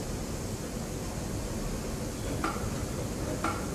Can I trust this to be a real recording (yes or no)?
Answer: yes